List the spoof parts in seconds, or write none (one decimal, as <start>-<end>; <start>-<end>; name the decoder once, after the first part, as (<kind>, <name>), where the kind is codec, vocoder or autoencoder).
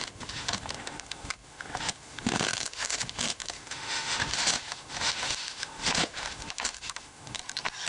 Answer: 0.0-7.4 (autoencoder, DAC-VAE)